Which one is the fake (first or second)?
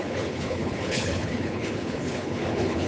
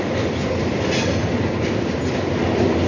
first